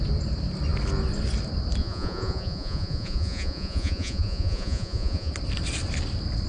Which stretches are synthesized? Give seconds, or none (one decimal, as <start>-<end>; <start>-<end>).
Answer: 1.8-5.3